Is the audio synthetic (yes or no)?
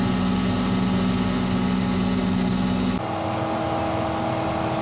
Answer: no